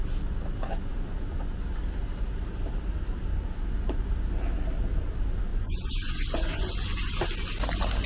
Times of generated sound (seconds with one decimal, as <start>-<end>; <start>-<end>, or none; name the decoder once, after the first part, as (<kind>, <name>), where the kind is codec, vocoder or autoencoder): 5.5-6.7 (vocoder, Vocos)